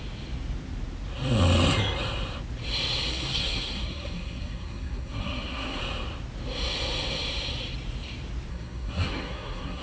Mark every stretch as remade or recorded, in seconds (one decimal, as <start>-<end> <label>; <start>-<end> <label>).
0.0-3.1 recorded; 3.1-5.8 remade; 5.8-8.5 recorded; 8.5-9.8 remade